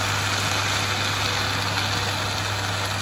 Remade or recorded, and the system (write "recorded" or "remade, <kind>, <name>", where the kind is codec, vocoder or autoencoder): recorded